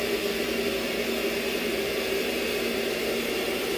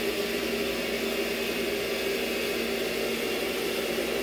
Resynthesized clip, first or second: first